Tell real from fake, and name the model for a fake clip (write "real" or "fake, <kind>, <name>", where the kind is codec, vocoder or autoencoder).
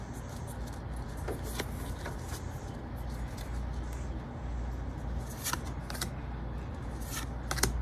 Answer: real